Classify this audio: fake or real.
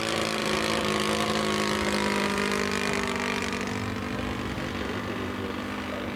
real